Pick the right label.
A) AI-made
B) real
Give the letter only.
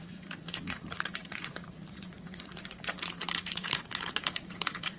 A